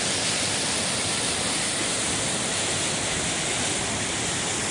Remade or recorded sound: recorded